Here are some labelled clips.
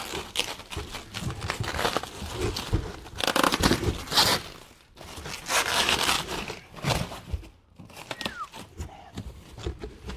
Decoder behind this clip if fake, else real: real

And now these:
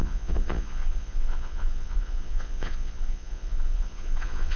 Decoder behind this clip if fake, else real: fake, vocoder, Vocos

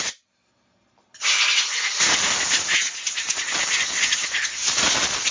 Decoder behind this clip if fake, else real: real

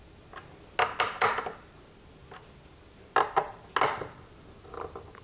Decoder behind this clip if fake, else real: real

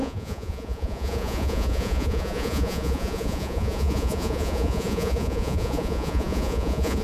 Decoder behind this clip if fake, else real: fake, vocoder, Vocos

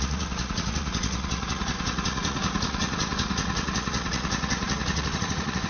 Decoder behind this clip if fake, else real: fake, vocoder, Vocos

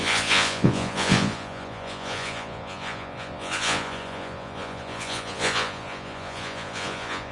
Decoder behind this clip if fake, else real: fake, vocoder, Vocos